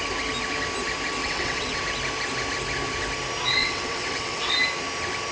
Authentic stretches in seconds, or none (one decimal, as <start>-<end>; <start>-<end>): 0.0-1.2; 1.8-3.6; 4.5-5.3